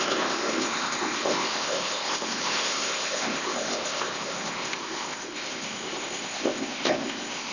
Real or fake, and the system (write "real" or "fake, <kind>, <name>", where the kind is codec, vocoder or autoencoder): fake, codec, ZipCodec